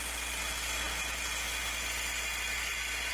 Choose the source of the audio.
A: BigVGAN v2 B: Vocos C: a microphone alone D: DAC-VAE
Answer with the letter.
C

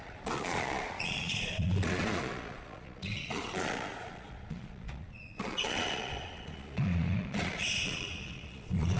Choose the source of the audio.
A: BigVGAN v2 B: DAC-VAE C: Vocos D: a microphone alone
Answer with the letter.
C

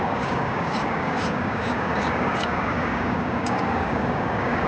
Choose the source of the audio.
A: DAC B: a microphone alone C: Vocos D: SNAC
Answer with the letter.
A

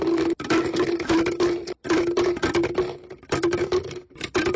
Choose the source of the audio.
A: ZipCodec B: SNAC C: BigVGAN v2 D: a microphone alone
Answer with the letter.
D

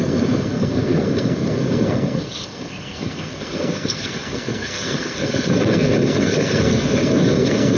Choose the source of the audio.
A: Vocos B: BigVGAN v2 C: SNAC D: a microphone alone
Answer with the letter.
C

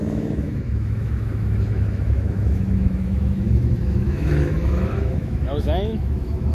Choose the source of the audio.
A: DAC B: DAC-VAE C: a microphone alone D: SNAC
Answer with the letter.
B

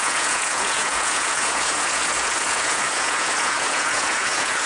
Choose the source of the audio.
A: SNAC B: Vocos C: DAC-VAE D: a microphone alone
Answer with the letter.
B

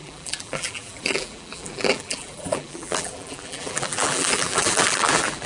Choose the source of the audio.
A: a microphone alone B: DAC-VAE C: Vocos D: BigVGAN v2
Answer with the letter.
D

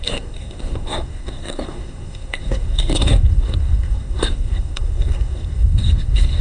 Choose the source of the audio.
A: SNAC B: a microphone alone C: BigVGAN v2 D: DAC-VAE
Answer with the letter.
A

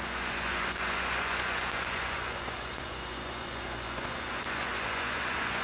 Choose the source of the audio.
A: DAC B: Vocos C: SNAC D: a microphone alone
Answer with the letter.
B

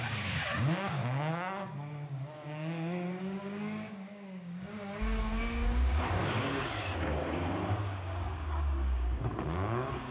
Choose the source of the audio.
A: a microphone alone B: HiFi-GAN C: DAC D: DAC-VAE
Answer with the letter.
C